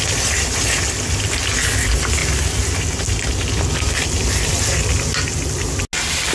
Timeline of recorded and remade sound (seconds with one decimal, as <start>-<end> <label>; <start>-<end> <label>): 0.0-6.3 recorded